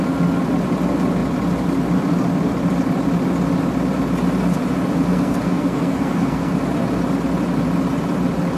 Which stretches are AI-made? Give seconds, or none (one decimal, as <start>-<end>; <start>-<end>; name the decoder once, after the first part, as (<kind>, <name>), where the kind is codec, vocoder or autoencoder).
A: 5.1-6.5 (codec, SNAC)